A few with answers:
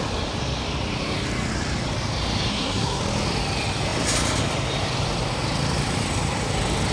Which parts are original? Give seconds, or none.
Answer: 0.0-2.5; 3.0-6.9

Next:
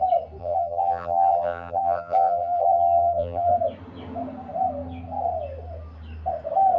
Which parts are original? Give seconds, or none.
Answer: 0.0-0.4; 3.5-6.8